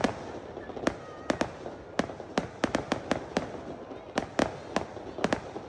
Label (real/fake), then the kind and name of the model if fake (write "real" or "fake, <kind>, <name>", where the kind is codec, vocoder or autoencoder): real